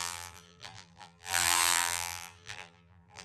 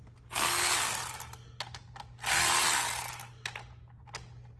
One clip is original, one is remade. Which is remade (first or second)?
first